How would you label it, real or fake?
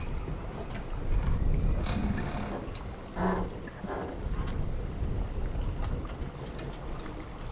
real